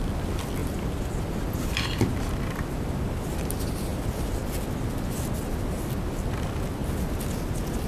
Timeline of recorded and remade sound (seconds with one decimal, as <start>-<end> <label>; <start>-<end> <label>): 0.0-7.9 recorded